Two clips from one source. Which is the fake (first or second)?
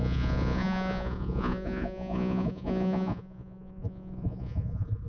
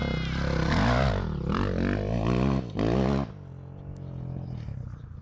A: first